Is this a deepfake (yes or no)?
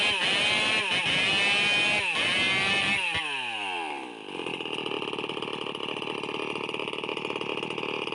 no